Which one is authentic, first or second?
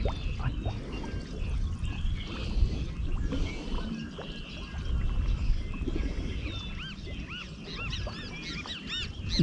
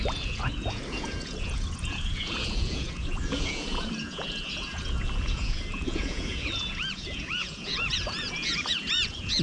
first